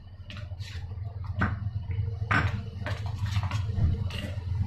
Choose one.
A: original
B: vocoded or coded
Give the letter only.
A